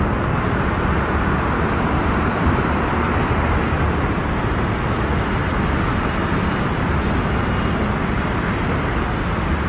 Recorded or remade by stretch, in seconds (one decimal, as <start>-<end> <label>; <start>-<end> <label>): 0.0-2.0 recorded; 2.0-2.8 remade; 2.8-9.7 recorded